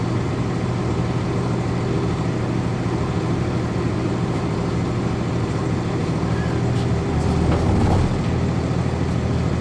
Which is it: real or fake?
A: real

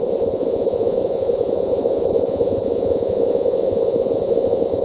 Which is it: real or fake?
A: fake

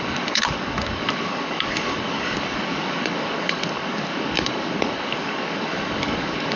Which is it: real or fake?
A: fake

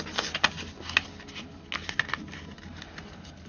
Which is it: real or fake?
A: real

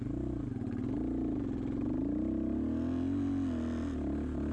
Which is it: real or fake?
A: real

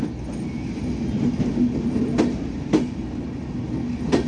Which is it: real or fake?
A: real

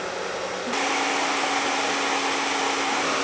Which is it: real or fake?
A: real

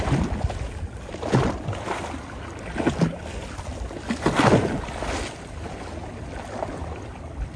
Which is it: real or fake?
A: real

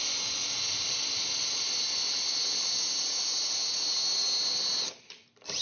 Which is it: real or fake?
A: real